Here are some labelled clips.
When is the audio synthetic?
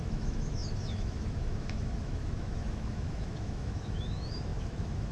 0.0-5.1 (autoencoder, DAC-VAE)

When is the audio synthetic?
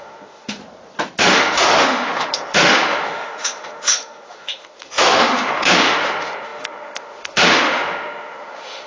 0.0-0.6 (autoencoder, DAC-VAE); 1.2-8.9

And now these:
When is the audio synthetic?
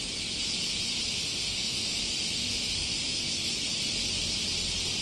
1.1-2.0 (autoencoder, DAC-VAE); 2.4-3.2